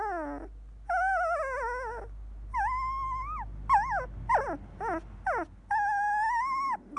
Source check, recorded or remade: recorded